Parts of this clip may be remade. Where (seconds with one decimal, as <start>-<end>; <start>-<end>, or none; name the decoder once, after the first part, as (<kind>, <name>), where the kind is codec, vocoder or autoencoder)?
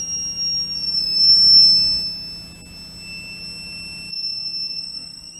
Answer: 4.1-5.4 (codec, SNAC)